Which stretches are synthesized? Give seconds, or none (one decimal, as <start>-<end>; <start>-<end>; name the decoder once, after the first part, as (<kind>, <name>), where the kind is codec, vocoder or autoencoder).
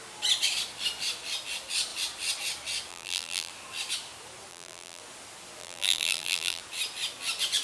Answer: 2.9-3.5 (vocoder, BigVGAN v2); 4.5-5.0; 5.6-6.6